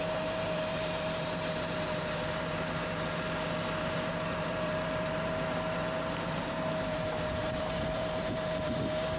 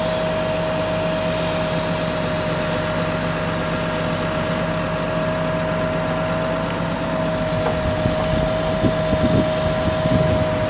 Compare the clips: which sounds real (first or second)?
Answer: second